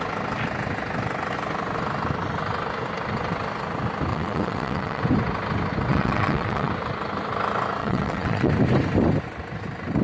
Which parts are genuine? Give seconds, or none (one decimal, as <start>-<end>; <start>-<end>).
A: 0.0-4.1; 5.0-5.9; 6.7-7.8; 8.5-10.0